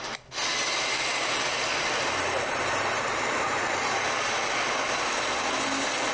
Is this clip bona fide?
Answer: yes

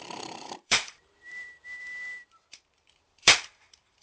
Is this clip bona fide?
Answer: no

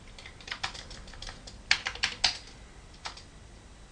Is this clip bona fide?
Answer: yes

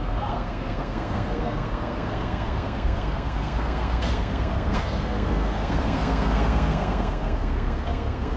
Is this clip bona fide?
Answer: no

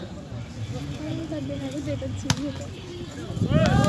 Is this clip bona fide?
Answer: yes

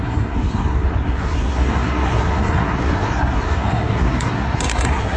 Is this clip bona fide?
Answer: no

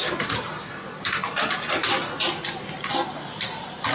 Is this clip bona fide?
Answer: yes